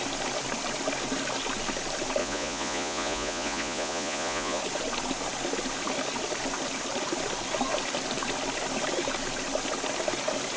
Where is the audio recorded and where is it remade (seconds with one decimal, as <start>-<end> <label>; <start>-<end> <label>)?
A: 0.0-2.2 recorded; 2.2-4.6 remade; 4.6-10.6 recorded